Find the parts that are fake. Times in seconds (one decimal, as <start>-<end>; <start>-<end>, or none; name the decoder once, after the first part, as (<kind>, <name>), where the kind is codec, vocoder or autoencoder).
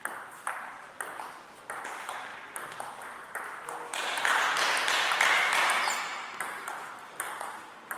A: 6.1-8.0 (vocoder, BigVGAN v2)